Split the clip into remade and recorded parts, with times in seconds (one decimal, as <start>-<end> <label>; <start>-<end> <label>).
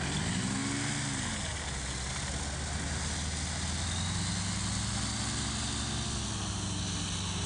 0.0-7.5 recorded